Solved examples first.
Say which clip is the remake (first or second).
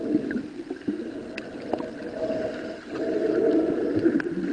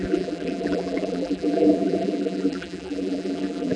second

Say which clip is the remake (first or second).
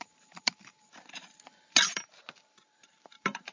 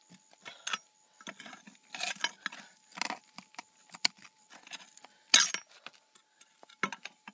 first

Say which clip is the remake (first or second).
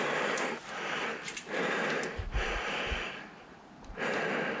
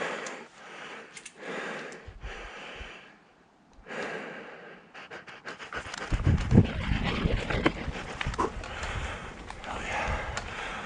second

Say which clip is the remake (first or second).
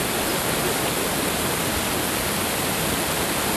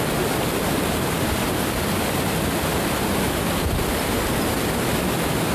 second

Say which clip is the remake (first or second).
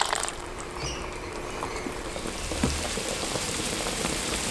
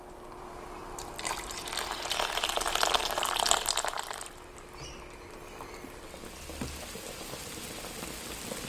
first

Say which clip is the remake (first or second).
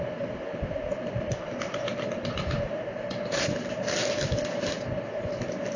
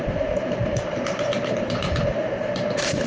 second